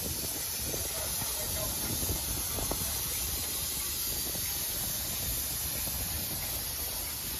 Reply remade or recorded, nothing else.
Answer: recorded